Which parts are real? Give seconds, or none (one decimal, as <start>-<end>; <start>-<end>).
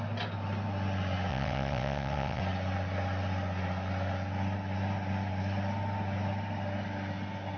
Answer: 0.0-1.3; 2.4-7.6